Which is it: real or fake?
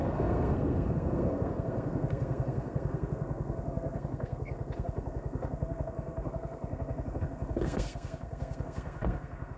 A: fake